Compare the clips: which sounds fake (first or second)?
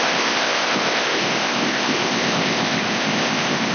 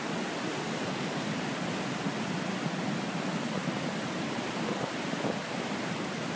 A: first